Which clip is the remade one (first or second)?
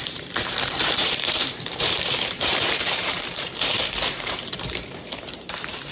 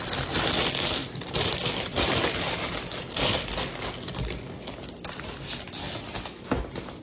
first